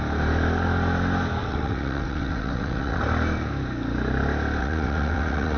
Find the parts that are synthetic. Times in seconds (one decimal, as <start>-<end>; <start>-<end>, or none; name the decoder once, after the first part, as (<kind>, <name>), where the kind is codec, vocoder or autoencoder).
1.4-3.0 (vocoder, WaveNeXt); 4.6-5.6